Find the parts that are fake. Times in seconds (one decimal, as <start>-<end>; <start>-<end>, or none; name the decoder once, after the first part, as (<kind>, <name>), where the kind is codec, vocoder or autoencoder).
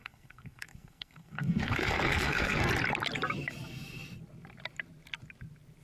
0.0-2.7 (codec, SNAC)